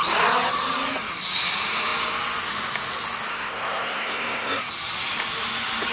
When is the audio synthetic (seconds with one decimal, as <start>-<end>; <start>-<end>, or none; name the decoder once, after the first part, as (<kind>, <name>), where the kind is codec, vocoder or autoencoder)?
3.3-4.7 (codec, SNAC)

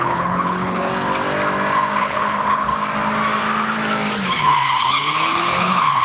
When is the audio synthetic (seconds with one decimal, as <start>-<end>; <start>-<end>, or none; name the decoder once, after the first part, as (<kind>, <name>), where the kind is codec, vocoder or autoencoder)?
0.0-0.9 (codec, HILCodec); 2.0-2.7; 4.4-6.0

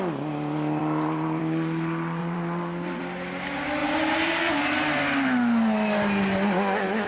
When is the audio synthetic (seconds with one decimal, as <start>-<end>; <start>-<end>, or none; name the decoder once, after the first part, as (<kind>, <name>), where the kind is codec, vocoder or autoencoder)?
0.8-1.4 (vocoder, BigVGAN v2); 2.2-3.0; 3.8-4.4

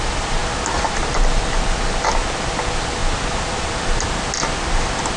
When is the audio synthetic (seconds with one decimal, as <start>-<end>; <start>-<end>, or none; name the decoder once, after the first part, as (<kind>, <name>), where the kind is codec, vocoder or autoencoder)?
none

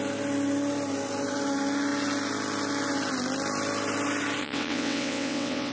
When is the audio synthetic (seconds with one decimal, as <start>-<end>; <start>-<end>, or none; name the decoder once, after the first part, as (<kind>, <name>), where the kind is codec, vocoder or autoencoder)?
4.4-5.7 (vocoder, WaveNeXt)

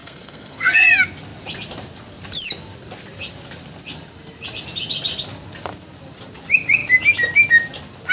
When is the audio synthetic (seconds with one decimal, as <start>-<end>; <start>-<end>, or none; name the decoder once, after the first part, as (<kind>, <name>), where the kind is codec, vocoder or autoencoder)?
0.0-0.9 (codec, SNAC)

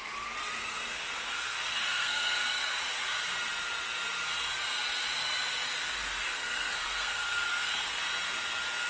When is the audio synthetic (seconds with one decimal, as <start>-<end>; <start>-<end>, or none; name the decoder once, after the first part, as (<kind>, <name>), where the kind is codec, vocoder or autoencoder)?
0.6-2.8 (codec, SNAC); 6.2-8.0

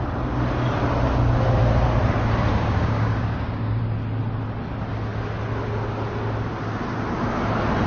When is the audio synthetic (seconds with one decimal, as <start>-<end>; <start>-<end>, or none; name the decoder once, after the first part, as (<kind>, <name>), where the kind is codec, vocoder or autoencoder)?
2.5-3.8 (codec, DAC)